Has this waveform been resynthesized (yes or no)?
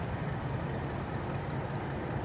no